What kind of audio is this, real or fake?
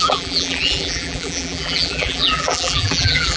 fake